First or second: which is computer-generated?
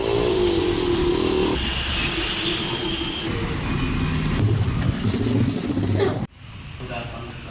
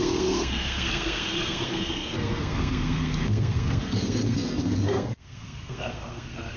second